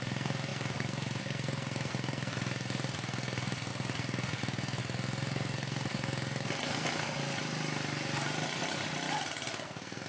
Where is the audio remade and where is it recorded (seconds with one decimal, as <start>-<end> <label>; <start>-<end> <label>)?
0.0-7.2 remade; 7.2-9.5 recorded; 9.5-10.1 remade